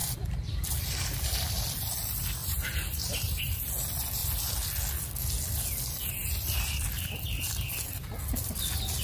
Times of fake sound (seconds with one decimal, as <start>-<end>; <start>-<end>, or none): 0.0-1.8; 2.4-3.6